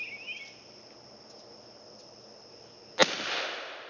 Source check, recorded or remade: recorded